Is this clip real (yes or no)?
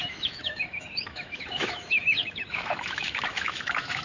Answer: no